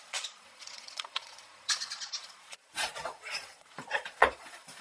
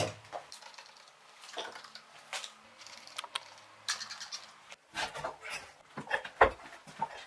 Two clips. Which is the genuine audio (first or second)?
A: second